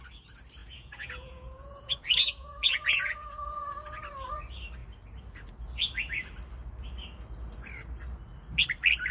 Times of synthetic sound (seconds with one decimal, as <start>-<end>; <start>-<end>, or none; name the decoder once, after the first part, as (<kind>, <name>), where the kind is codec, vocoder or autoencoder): 0.6-3.7 (vocoder, Vocos)